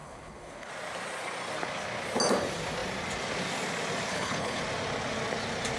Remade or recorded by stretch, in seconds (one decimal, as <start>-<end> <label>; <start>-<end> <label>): 0.0-0.7 remade; 0.7-4.1 recorded; 4.1-4.6 remade; 4.6-5.8 recorded